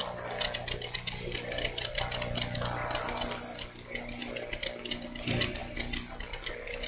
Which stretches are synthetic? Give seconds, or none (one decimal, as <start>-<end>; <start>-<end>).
none